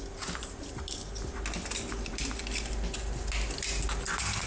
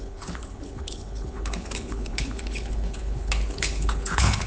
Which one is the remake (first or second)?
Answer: second